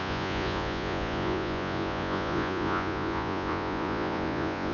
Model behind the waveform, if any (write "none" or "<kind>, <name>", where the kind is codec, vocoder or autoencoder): vocoder, Vocos